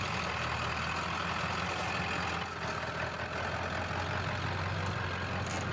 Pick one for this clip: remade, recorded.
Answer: recorded